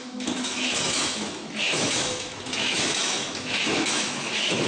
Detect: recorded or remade remade